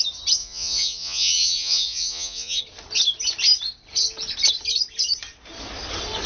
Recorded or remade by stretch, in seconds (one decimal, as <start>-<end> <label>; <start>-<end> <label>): 0.0-0.4 recorded; 0.4-2.6 remade; 2.6-6.3 recorded